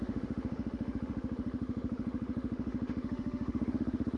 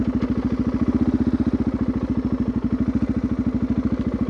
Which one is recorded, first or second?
second